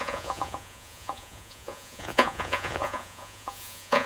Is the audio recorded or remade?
remade